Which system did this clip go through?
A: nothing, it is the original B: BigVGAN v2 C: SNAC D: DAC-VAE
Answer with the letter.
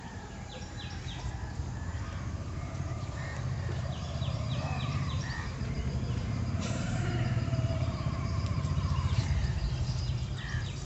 B